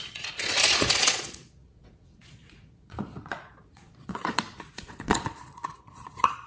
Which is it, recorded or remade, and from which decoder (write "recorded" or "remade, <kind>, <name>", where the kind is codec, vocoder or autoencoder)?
remade, vocoder, Vocos